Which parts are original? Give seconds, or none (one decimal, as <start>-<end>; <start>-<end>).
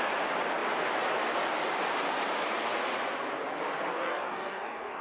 0.0-3.9